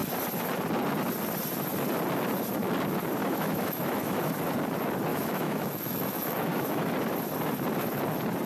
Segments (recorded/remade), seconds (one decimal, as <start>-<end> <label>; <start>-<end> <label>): 0.0-3.2 recorded; 3.2-4.2 remade; 4.2-5.1 recorded; 5.1-6.9 remade; 6.9-8.5 recorded